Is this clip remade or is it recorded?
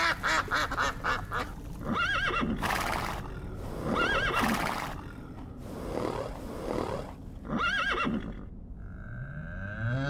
recorded